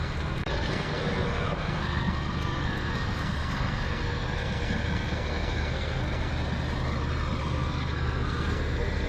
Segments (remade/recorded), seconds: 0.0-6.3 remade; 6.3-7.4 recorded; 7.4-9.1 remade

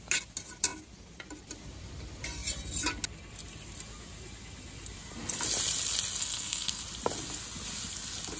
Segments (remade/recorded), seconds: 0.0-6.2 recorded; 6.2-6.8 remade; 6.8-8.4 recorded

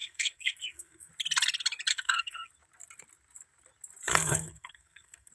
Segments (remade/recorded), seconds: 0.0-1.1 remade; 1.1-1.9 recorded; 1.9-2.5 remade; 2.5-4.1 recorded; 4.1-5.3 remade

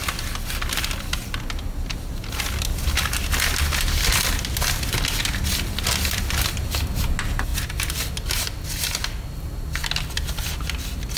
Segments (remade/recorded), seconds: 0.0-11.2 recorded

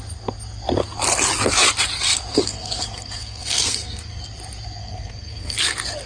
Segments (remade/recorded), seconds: 0.0-2.3 recorded; 2.3-4.2 remade; 4.2-4.8 recorded; 4.8-5.6 remade; 5.6-6.1 recorded

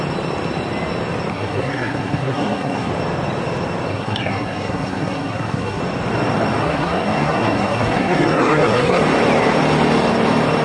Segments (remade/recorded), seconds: 0.0-1.3 recorded; 1.3-2.9 remade; 2.9-3.9 recorded; 3.9-5.8 remade; 5.8-6.6 recorded; 6.6-9.0 remade; 9.0-10.6 recorded

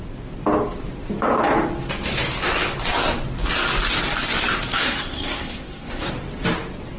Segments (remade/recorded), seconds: 0.0-4.8 recorded; 4.8-6.1 remade; 6.1-7.0 recorded